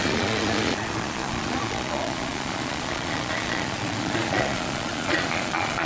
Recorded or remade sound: remade